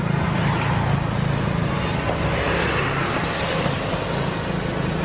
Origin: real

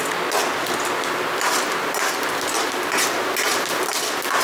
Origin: real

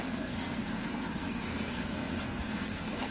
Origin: fake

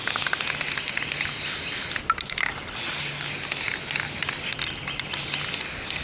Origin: real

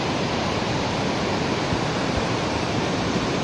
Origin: fake